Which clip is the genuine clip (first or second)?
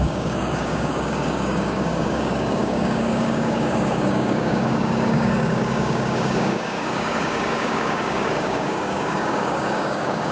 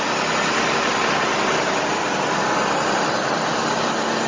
second